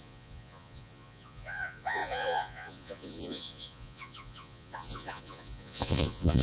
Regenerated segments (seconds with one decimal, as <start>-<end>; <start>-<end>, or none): 0.0-6.4